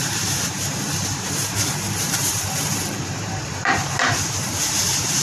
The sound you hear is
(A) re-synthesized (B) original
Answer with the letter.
A